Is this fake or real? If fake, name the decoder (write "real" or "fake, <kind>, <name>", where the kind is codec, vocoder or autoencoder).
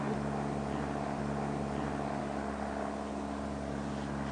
real